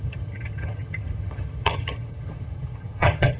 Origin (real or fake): fake